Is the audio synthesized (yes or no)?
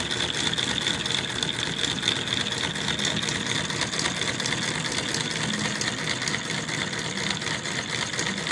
no